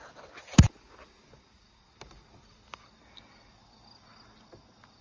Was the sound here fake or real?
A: real